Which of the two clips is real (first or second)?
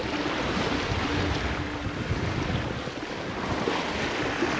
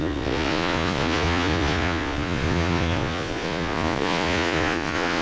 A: first